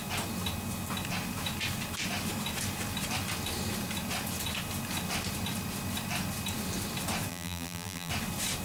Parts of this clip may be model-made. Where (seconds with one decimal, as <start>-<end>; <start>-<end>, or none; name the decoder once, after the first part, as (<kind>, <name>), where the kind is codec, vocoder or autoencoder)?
7.3-8.1 (vocoder, BigVGAN v2)